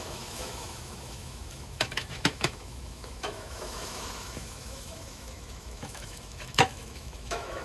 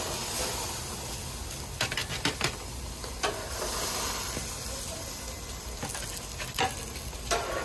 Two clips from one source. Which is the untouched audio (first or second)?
second